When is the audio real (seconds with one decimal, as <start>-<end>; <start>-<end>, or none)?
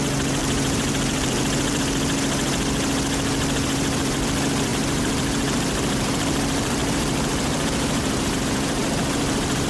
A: 0.0-0.4; 1.8-4.7